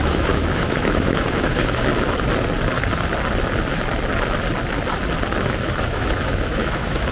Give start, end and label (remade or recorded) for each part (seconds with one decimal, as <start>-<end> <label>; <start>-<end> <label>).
0.0-1.9 remade; 1.9-5.4 recorded; 5.4-7.1 remade